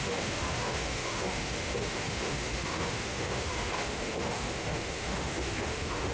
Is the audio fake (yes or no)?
yes